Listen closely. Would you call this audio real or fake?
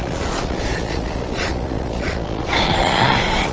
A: fake